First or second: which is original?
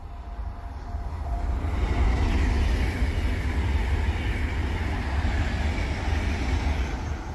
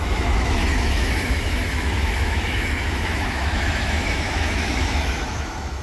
first